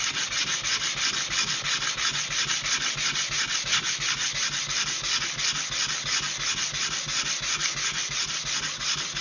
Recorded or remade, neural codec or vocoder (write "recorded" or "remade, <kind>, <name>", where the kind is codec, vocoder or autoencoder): recorded